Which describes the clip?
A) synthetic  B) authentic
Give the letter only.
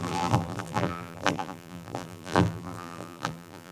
A